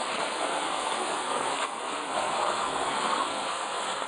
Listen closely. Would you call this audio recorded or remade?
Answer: remade